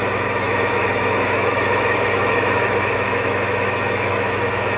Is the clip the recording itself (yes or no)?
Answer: no